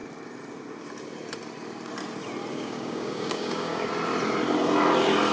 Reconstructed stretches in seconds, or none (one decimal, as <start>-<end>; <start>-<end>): 2.5-3.9